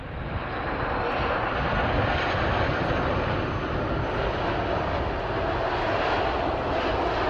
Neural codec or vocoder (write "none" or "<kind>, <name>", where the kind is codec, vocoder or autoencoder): none